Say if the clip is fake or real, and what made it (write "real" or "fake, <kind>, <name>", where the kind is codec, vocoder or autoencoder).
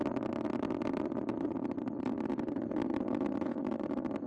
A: real